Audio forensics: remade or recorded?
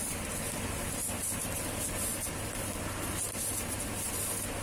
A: recorded